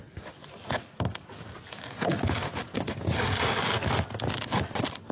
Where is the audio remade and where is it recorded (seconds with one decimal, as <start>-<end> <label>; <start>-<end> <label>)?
0.0-5.1 recorded